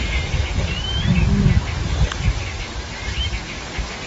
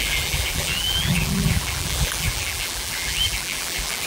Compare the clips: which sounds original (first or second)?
first